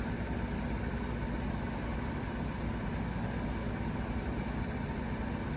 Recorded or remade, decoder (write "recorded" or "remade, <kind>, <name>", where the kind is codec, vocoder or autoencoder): recorded